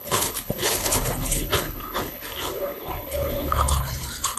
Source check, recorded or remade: remade